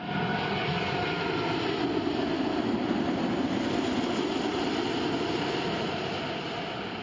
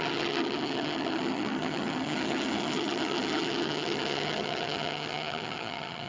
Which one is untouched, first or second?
first